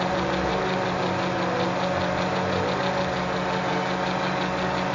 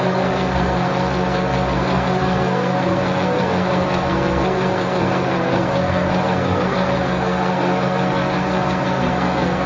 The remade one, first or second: second